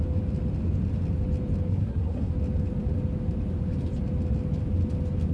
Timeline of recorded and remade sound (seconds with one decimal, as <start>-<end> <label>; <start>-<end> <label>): 0.0-1.7 recorded; 1.7-2.3 remade; 2.3-5.3 recorded